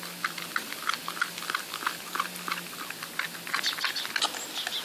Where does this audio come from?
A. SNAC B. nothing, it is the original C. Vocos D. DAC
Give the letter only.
B